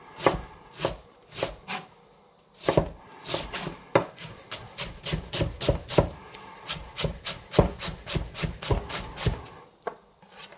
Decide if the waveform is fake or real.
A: real